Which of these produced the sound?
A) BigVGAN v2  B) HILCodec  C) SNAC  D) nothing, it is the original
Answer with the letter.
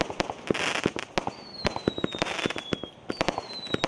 D